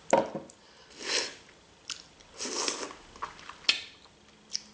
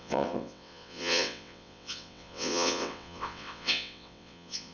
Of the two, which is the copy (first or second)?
second